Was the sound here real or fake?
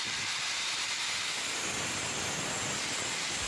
fake